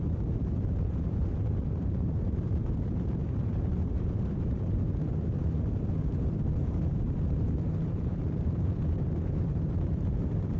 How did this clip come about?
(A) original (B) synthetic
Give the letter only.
B